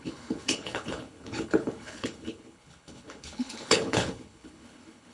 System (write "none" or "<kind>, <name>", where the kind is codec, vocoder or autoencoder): codec, HILCodec